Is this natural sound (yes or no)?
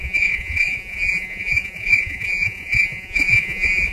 no